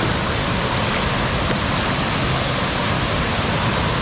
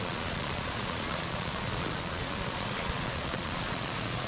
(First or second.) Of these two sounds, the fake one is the second